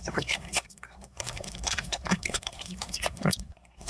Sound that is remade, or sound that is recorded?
remade